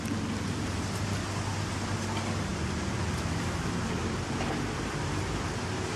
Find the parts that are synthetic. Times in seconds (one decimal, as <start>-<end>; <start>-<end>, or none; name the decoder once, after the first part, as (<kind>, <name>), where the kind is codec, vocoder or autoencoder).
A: none